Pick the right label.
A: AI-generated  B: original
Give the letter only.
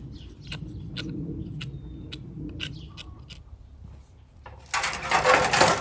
B